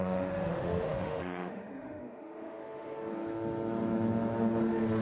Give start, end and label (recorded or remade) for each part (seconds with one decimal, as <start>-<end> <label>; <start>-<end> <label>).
0.0-3.1 remade; 3.1-4.6 recorded; 4.6-5.0 remade